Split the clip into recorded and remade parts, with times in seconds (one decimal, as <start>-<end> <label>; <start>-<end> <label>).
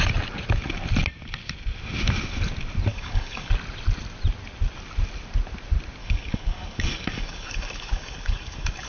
0.0-2.9 recorded; 2.9-3.5 remade; 3.5-6.0 recorded; 6.0-8.9 remade